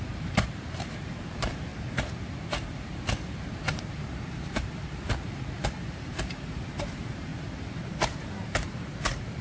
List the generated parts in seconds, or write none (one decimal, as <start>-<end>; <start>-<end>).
0.0-1.7; 2.5-7.3; 7.9-9.4